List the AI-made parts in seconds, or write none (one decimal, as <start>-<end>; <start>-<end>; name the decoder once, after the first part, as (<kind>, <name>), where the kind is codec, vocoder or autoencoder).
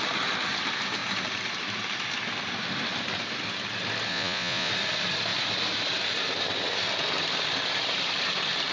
4.1-4.7 (vocoder, Vocos)